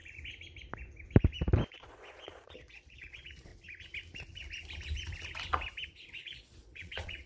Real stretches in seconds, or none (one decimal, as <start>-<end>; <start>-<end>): 0.0-1.7; 3.5-6.2